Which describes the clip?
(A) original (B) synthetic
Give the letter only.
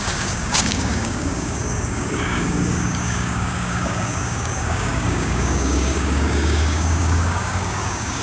B